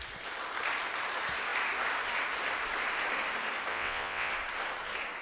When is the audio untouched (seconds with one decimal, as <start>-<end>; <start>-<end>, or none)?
0.0-3.7; 4.3-5.2